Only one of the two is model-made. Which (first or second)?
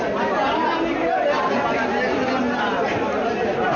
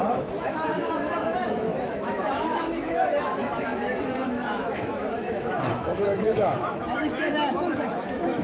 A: second